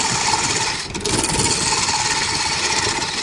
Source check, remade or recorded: recorded